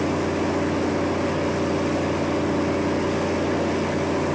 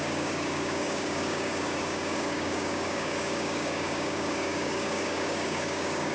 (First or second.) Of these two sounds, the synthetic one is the second